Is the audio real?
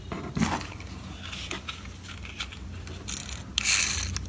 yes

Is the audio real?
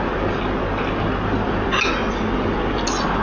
yes